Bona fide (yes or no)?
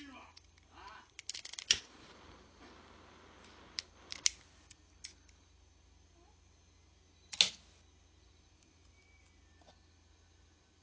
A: yes